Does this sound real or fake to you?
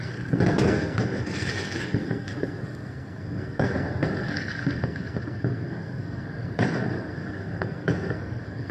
fake